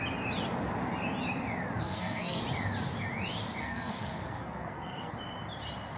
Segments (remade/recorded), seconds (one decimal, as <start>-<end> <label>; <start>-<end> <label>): 0.0-1.8 recorded; 1.8-2.4 remade; 2.4-3.6 recorded; 3.6-5.1 remade; 5.1-6.0 recorded